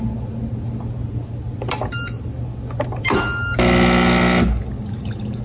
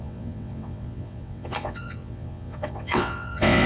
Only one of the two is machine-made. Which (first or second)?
second